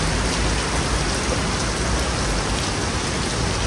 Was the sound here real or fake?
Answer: real